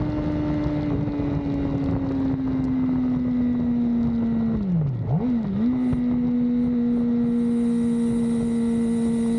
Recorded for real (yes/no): yes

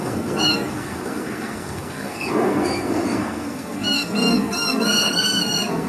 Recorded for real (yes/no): no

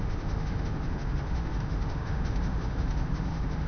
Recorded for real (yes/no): no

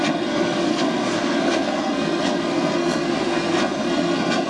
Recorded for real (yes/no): no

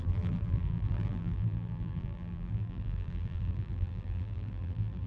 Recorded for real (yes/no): no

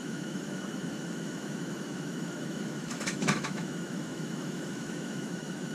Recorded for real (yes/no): no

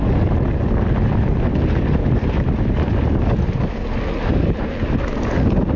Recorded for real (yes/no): yes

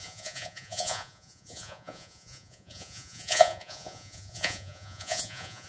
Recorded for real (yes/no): no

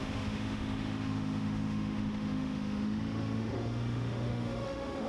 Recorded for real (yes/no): no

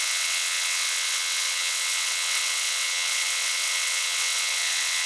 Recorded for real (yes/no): no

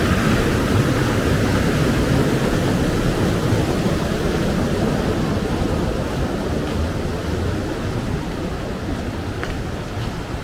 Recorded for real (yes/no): yes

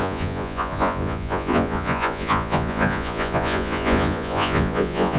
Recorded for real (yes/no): no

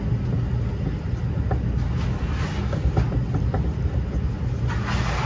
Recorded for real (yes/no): yes